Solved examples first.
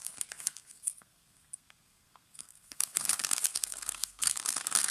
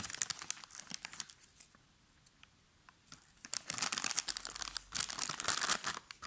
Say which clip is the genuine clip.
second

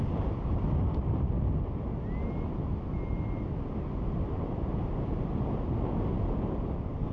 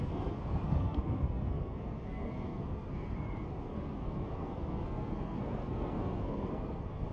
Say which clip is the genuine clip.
first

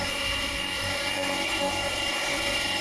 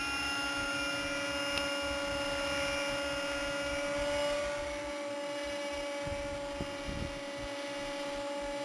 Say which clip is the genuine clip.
second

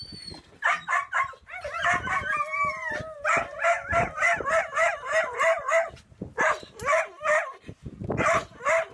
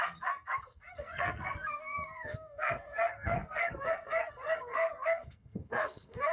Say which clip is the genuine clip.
first